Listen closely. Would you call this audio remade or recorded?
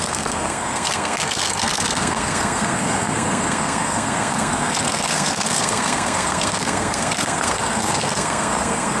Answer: remade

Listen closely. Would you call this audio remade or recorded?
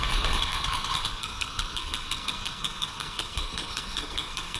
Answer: remade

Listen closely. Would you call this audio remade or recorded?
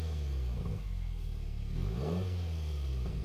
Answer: remade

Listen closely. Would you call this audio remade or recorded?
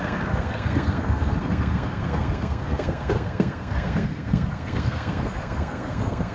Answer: remade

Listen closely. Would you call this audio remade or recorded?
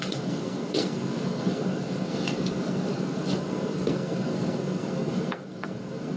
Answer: remade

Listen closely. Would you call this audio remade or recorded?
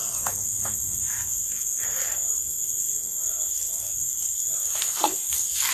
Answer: remade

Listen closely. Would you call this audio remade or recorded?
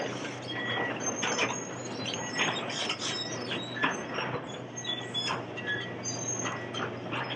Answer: recorded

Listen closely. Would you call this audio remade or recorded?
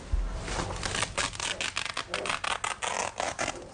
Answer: recorded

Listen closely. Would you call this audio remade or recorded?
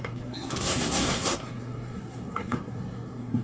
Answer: remade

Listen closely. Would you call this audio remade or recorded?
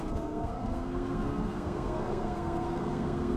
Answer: remade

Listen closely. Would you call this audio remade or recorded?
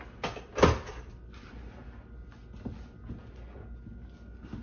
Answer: recorded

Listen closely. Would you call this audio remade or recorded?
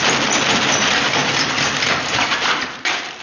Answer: recorded